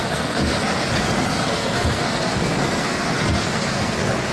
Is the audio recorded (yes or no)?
no